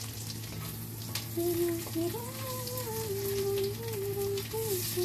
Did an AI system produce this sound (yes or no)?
no